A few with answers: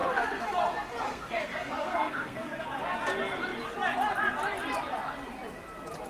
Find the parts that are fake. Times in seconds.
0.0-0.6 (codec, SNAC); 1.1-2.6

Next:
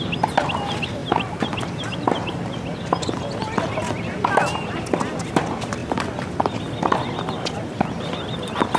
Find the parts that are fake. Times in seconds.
none

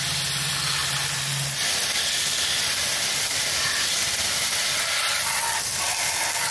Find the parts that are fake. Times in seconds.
none